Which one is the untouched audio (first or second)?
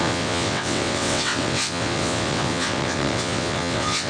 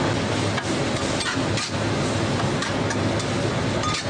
second